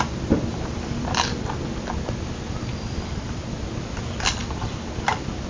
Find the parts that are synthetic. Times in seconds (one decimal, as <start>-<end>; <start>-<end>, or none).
0.5-2.0; 2.7-3.6; 4.4-5.5